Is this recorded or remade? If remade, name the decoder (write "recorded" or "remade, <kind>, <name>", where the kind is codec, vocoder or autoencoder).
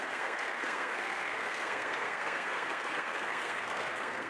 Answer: remade, codec, SNAC